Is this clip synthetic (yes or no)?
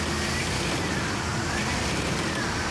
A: no